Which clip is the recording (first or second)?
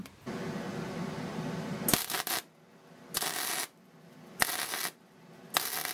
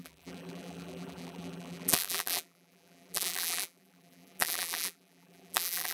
first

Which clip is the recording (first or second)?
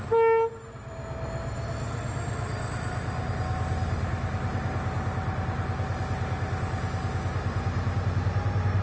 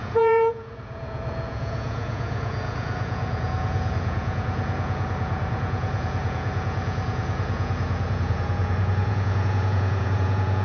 first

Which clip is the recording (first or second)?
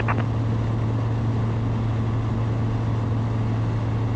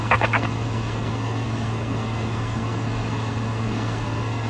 first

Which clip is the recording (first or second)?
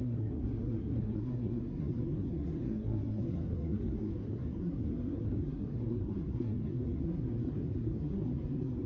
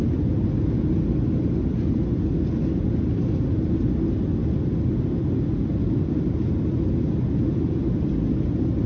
second